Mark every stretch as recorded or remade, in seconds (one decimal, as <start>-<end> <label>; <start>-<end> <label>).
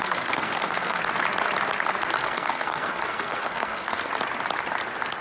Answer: 0.0-1.0 remade; 1.0-2.2 recorded; 2.2-4.1 remade; 4.1-5.2 recorded